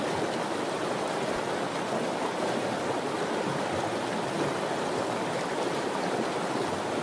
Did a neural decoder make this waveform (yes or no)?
no